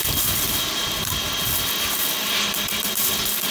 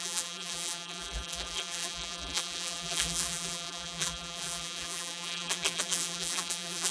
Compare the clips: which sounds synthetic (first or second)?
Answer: second